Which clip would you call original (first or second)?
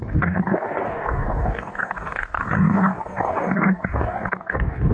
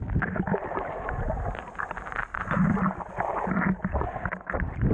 second